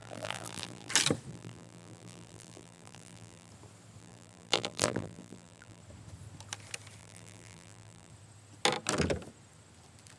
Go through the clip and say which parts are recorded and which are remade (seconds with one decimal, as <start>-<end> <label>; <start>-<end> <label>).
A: 0.0-0.9 remade; 0.9-1.3 recorded; 1.3-3.5 remade; 3.5-4.0 recorded; 4.0-5.8 remade; 5.8-7.0 recorded; 7.0-8.1 remade; 8.1-10.2 recorded